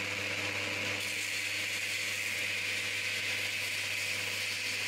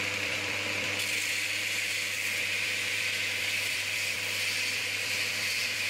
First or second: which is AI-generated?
second